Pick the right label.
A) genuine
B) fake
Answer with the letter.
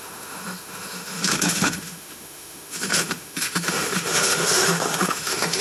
B